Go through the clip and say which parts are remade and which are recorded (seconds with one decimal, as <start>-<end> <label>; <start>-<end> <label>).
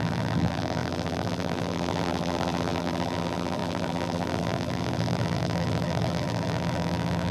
0.0-7.3 remade